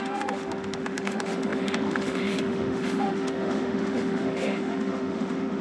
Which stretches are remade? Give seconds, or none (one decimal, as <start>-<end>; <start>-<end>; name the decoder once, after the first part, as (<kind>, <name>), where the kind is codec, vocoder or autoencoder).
0.0-5.6 (autoencoder, DAC-VAE)